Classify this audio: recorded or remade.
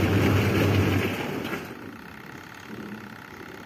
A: recorded